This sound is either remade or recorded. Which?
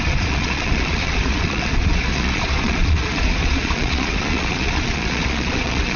remade